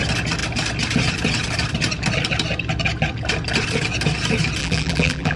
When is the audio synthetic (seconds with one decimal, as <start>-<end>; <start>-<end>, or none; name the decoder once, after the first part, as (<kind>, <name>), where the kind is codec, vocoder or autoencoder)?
4.6-5.4 (vocoder, BigVGAN v2)